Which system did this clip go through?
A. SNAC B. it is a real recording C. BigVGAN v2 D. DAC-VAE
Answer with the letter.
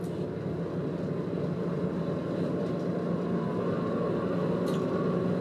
B